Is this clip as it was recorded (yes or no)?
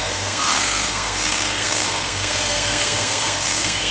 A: no